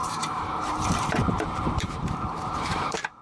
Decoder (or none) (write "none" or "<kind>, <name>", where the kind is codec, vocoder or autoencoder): vocoder, BigVGAN v2